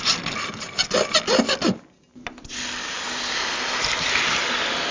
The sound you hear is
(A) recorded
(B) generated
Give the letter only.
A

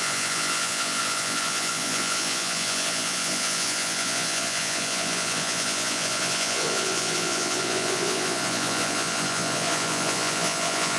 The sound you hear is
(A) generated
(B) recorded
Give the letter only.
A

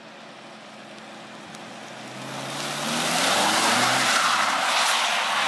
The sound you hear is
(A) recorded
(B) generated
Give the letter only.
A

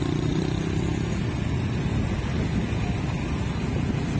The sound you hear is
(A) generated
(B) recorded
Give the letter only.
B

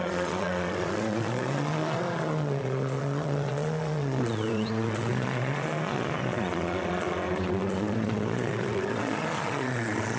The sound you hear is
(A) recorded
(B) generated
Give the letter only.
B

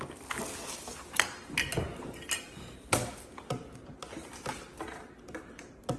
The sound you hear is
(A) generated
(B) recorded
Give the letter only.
B